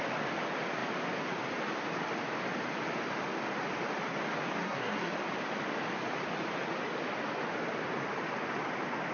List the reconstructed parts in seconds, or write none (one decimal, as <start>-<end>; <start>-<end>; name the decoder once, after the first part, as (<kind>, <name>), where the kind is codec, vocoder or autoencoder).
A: 4.6-5.1 (codec, SNAC)